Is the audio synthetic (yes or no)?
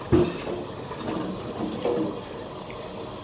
no